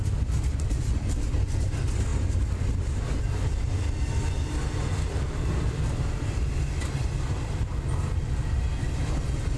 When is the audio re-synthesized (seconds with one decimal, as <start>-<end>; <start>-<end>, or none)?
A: none